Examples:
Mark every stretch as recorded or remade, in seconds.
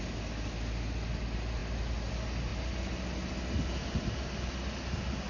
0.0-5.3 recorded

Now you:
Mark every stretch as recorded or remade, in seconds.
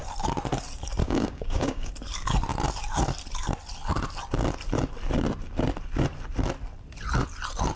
0.0-1.0 recorded; 1.0-1.9 remade; 1.9-7.8 recorded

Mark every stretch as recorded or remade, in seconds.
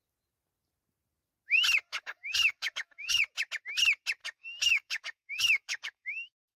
0.0-1.9 recorded; 1.9-3.2 remade; 3.2-4.2 recorded; 4.2-6.6 remade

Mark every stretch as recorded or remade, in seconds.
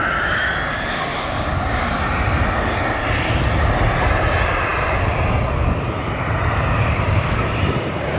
0.0-0.7 recorded; 0.7-1.9 remade; 1.9-8.2 recorded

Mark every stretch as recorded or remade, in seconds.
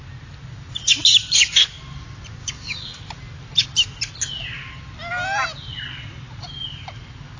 0.0-2.4 recorded; 2.4-3.0 remade; 3.0-7.4 recorded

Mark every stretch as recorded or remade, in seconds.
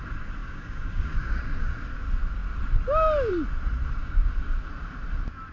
0.0-0.4 recorded; 0.4-1.7 remade; 1.7-4.0 recorded; 4.0-4.6 remade; 4.6-5.5 recorded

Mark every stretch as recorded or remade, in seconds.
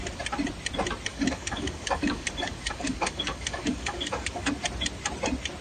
0.0-1.1 recorded; 1.1-4.5 remade; 4.5-5.6 recorded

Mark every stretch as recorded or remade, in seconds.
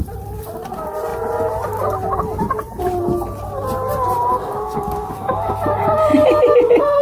0.0-4.4 recorded; 4.4-5.5 remade; 5.5-7.0 recorded